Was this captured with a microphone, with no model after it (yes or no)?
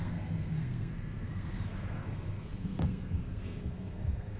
no